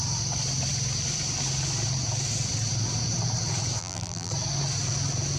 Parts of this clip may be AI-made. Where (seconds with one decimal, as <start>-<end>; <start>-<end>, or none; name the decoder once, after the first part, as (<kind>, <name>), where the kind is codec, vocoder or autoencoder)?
3.8-4.3 (vocoder, BigVGAN v2)